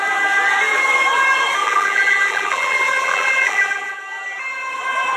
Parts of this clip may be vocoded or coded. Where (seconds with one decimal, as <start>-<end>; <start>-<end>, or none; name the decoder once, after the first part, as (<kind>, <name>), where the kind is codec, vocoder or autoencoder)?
1.6-4.0 (vocoder, BigVGAN v2)